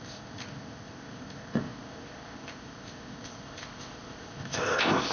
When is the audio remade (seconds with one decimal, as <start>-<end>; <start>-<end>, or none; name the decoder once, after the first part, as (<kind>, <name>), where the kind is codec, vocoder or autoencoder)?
0.0-5.1 (codec, ZipCodec)